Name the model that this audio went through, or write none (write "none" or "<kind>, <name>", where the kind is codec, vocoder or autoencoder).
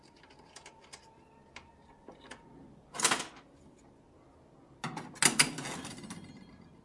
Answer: none